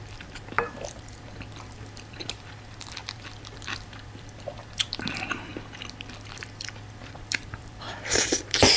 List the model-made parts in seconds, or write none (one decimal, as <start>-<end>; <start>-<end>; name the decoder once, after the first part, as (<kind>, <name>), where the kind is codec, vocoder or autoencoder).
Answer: 0.0-5.5 (vocoder, BigVGAN v2); 6.3-8.8